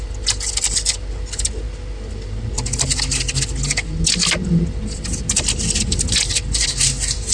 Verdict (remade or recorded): recorded